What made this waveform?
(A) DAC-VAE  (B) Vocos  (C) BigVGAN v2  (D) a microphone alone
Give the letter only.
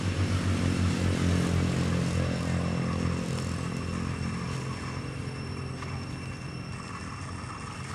D